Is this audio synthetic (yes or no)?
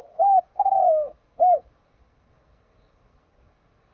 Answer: yes